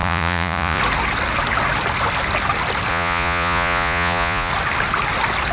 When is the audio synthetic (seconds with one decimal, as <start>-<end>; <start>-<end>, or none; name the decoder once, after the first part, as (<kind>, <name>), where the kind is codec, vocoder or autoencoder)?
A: 0.0-0.8 (vocoder, Vocos); 2.9-4.5